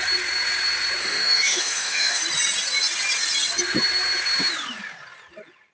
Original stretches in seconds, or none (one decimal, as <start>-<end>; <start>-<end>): 0.0-1.0; 2.2-5.7